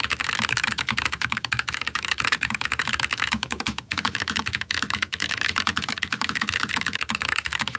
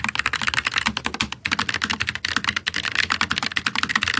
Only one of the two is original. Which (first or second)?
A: second